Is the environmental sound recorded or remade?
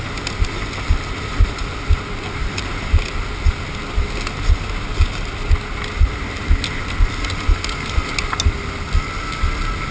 recorded